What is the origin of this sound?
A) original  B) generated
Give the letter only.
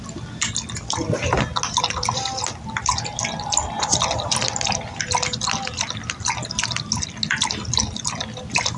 A